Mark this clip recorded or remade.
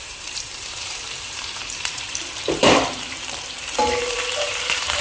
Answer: remade